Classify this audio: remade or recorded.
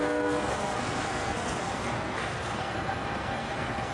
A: remade